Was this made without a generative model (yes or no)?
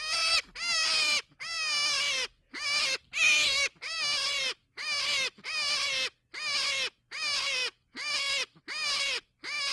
yes